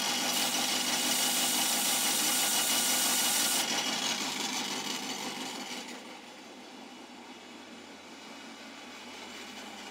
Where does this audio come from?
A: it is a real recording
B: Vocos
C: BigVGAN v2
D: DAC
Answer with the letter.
A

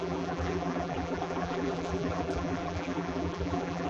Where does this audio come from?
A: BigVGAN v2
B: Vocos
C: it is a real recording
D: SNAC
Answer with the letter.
A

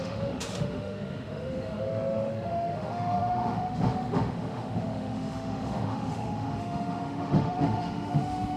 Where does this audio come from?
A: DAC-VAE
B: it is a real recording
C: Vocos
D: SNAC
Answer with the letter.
A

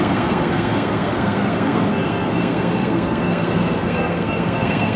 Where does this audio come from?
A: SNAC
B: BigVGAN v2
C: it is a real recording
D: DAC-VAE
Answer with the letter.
A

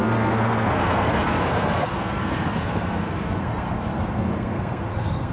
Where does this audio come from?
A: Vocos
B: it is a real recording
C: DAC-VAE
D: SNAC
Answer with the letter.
D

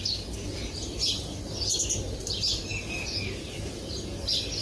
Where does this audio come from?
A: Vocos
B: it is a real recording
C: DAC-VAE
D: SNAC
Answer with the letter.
B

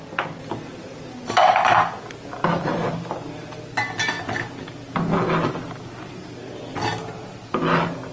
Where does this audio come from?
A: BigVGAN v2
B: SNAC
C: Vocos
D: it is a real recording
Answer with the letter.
D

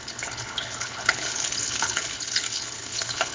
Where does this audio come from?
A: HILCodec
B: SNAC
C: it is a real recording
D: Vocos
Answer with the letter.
A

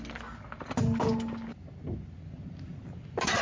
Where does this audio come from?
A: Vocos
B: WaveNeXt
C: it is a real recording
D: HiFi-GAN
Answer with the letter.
C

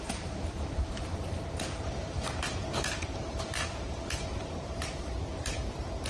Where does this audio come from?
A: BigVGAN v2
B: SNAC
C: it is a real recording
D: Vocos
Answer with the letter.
A